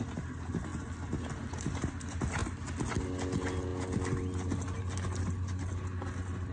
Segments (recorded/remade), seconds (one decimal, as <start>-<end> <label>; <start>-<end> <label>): 0.0-6.5 recorded